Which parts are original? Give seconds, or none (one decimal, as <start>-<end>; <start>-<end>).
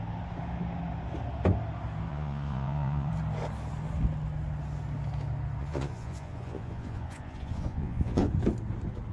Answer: 0.0-2.1; 3.1-5.6; 8.3-9.1